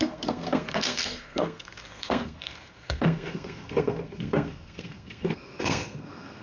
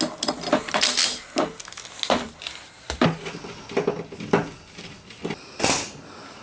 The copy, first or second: first